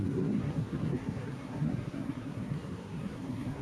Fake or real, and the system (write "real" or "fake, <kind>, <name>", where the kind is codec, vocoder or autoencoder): fake, codec, SNAC